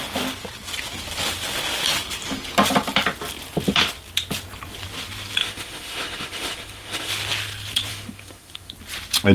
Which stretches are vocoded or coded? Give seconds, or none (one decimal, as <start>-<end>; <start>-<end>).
5.4-7.1; 7.9-8.7